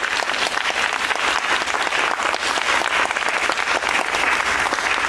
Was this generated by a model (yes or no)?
no